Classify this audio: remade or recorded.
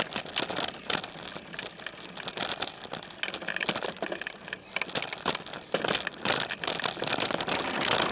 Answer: recorded